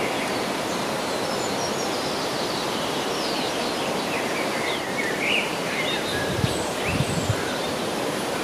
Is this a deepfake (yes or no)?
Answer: yes